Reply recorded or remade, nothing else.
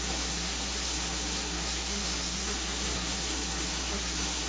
remade